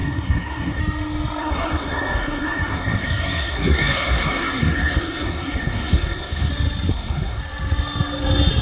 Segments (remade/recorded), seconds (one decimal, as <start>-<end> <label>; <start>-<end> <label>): 0.0-0.8 remade; 0.8-1.4 recorded; 1.4-6.5 remade; 6.5-6.9 recorded; 6.9-7.4 remade; 7.4-8.6 recorded